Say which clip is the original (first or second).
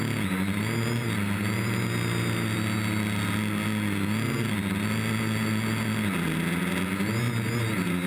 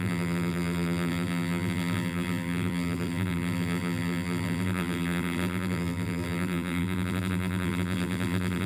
first